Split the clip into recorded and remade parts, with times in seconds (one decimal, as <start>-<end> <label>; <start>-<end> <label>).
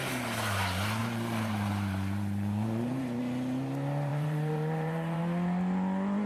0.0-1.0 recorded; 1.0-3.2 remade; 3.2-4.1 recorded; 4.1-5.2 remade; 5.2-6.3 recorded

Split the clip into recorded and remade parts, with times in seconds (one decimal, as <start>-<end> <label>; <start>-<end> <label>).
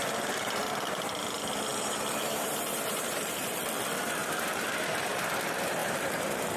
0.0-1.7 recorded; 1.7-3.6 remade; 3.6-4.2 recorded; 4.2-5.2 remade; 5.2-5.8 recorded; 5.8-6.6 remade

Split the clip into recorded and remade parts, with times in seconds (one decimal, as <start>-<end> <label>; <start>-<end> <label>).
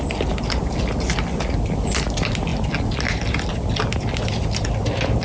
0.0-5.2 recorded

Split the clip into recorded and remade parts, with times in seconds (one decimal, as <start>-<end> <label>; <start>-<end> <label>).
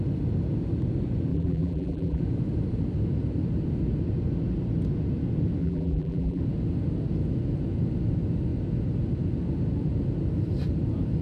0.0-1.3 recorded; 1.3-2.2 remade; 2.2-5.6 recorded; 5.6-6.4 remade; 6.4-11.2 recorded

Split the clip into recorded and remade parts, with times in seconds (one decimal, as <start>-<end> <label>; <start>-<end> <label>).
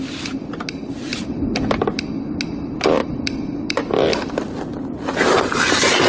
0.0-1.1 recorded; 1.1-2.1 remade; 2.1-3.1 recorded; 3.1-4.6 remade; 4.6-6.1 recorded